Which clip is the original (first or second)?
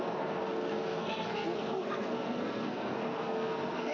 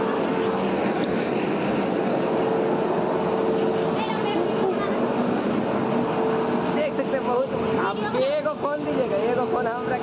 second